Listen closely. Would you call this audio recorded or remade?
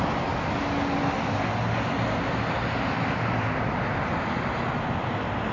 recorded